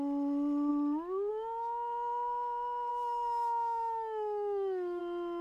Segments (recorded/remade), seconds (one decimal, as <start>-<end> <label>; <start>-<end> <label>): 0.0-2.9 recorded; 2.9-5.0 remade; 5.0-5.4 recorded